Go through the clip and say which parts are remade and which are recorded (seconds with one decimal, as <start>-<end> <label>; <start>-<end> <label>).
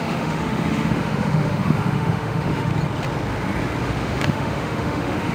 0.0-2.7 remade; 2.7-3.8 recorded; 3.8-5.3 remade